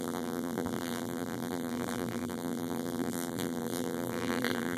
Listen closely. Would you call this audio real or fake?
fake